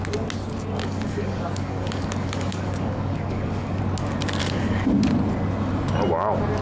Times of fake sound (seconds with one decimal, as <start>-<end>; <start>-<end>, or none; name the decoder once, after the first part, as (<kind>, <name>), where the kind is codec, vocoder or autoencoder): 0.8-3.8 (codec, DAC); 4.4-4.9